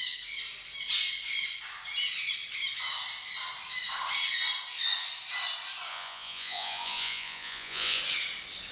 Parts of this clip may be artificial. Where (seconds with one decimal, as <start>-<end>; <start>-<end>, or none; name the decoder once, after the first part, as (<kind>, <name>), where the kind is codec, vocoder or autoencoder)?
5.9-8.0 (vocoder, Vocos)